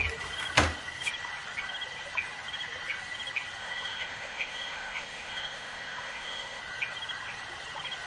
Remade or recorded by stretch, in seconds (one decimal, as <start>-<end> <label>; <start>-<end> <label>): 0.0-3.6 recorded; 3.6-6.6 remade; 6.6-8.1 recorded